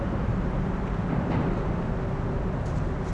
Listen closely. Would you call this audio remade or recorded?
recorded